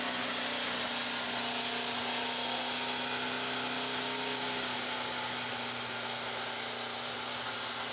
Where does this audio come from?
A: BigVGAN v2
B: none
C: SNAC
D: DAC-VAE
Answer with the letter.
B